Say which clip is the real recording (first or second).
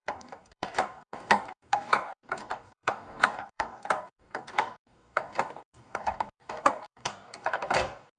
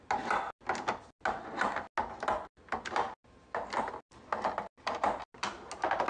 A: second